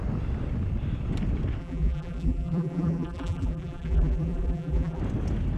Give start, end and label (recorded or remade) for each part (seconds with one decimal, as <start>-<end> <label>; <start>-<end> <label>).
0.0-1.6 recorded; 1.6-5.0 remade; 5.0-5.6 recorded